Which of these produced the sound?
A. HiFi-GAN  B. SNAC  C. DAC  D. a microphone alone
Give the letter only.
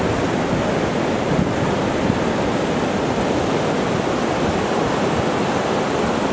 D